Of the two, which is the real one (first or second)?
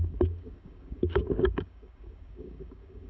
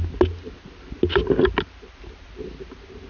second